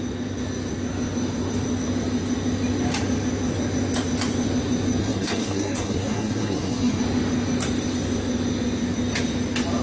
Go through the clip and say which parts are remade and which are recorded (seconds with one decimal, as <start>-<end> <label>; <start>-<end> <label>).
0.0-5.0 recorded; 5.0-7.0 remade; 7.0-9.8 recorded